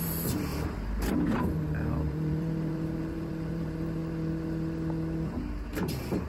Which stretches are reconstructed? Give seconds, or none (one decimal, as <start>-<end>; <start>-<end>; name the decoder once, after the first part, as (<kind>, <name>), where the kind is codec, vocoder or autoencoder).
0.0-0.5 (vocoder, BigVGAN v2); 1.1-4.0